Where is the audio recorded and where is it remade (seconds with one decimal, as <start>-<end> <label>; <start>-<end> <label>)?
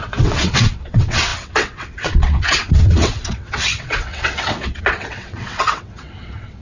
0.0-6.6 remade